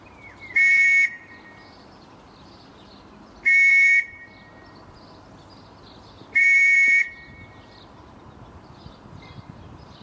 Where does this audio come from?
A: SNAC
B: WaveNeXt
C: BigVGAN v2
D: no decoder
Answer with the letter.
C